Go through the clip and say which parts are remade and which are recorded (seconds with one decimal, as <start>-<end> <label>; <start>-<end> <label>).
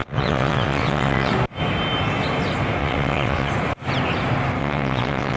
0.0-1.3 remade; 1.3-2.8 recorded; 2.8-3.5 remade; 3.5-4.6 recorded; 4.6-5.4 remade